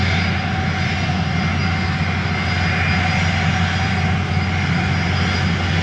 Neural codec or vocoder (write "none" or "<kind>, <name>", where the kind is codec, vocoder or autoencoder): none